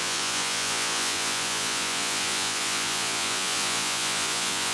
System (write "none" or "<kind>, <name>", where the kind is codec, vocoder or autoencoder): vocoder, Vocos